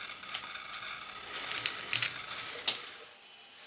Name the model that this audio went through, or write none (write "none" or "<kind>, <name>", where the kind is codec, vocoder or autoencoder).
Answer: none